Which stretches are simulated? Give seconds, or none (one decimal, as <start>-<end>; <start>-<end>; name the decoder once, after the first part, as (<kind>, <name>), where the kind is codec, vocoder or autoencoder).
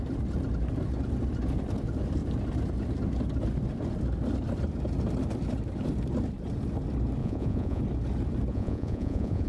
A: 7.2-7.8 (vocoder, Vocos); 8.5-9.5